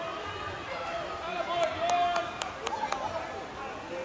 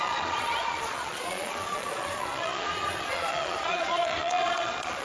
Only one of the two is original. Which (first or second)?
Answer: first